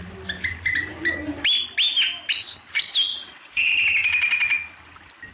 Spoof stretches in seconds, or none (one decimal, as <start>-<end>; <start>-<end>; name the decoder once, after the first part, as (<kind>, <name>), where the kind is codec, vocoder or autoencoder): 3.1-3.7 (vocoder, WaveNeXt)